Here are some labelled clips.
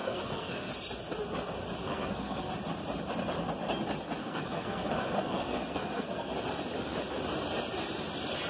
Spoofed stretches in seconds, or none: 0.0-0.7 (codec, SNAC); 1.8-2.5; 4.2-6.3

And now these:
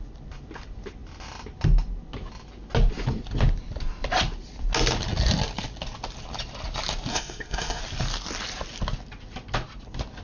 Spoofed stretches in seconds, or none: 7.1-7.8 (codec, SNAC)

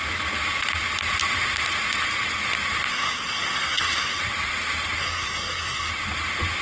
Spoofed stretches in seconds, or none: 2.9-4.2 (codec, SNAC); 5.0-5.9

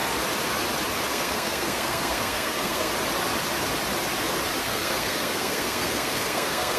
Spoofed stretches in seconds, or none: 1.1-2.9 (codec, SNAC); 4.6-6.8

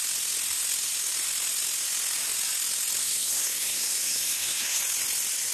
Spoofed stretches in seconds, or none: 3.0-4.8 (codec, SNAC)

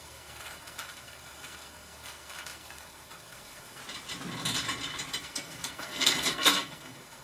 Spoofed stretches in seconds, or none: 0.0-3.8 (codec, SNAC); 5.2-7.2

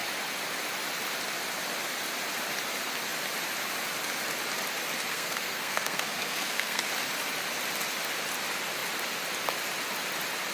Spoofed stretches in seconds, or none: 5.1-6.8 (codec, SNAC)